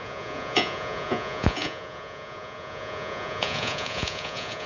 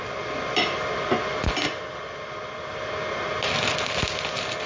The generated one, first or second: first